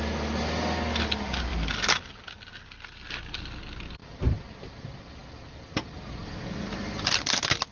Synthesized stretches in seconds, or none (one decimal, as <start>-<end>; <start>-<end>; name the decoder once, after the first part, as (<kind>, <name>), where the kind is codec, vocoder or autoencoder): none